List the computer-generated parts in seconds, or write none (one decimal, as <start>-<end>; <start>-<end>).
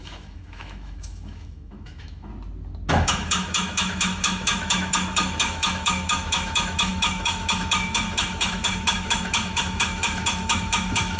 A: 0.0-2.3; 2.9-11.2